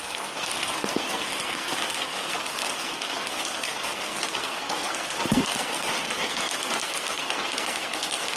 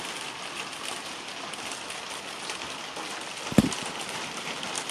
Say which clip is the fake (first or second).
first